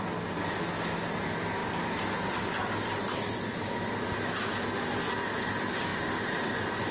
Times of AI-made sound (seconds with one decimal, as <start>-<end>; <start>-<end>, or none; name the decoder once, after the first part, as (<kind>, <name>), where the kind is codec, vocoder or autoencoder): none